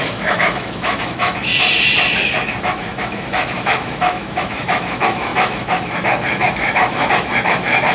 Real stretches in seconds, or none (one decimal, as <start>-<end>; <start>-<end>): 1.5-2.6